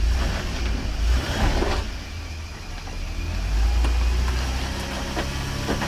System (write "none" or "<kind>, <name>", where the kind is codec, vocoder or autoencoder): none